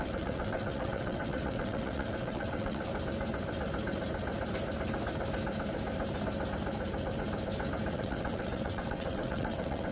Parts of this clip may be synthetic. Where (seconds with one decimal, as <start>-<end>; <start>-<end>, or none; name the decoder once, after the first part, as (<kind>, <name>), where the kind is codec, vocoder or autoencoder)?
0.0-2.9 (vocoder, WaveNeXt); 7.9-9.9